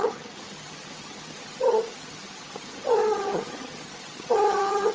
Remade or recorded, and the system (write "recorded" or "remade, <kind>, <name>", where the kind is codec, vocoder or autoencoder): remade, vocoder, HiFi-GAN